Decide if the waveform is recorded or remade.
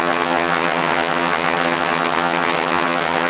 remade